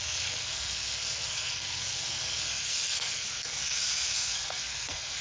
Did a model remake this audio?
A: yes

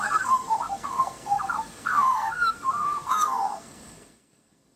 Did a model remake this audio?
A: yes